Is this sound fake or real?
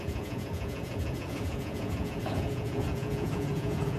fake